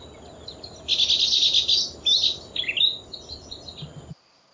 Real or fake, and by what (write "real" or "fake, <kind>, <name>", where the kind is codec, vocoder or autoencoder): real